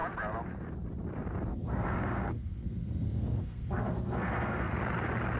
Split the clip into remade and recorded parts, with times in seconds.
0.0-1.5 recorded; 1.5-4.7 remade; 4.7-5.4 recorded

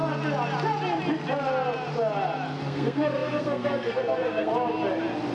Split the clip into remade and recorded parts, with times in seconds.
0.0-2.6 recorded; 2.6-4.5 remade; 4.5-5.3 recorded

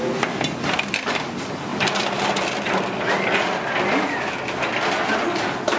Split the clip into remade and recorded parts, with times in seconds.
0.0-5.8 recorded